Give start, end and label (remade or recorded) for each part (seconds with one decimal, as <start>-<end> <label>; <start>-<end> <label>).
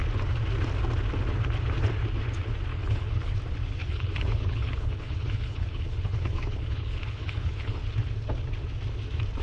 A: 0.0-2.7 recorded; 2.7-3.3 remade; 3.3-3.8 recorded; 3.8-7.8 remade; 7.8-9.4 recorded